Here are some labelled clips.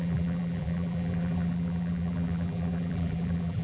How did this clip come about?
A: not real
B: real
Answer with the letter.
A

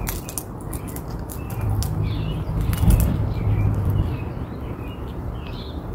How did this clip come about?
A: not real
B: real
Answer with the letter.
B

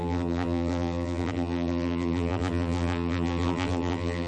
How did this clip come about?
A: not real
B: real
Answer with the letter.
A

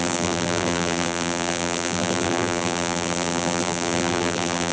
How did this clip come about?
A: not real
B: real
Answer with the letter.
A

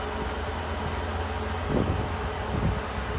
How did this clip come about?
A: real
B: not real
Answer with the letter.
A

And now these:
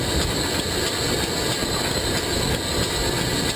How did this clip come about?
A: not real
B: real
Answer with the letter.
B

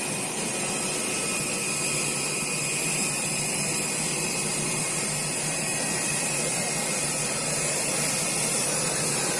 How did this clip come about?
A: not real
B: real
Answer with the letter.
B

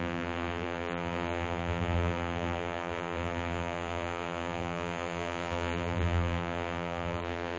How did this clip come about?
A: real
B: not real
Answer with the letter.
B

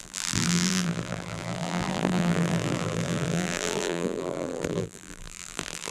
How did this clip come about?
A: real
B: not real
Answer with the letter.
B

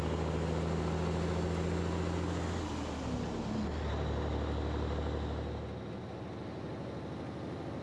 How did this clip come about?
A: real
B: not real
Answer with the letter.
A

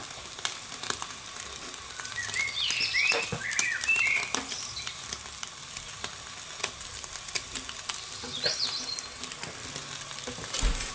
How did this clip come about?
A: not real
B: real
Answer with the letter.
B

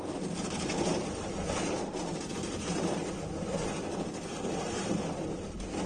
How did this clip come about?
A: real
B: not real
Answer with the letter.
A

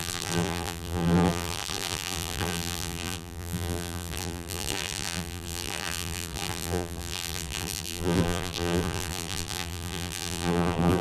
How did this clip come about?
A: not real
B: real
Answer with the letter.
A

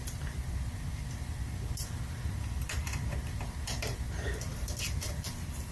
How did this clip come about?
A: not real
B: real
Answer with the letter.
A